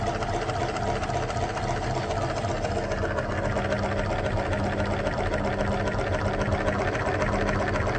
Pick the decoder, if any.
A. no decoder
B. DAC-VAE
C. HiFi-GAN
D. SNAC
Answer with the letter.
A